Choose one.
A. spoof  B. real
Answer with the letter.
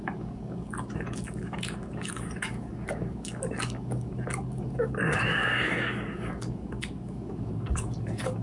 A